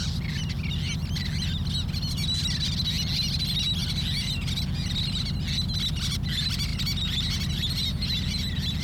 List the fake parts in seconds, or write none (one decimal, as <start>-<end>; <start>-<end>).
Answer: none